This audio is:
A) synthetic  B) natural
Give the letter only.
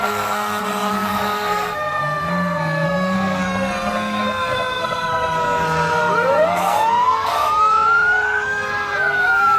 A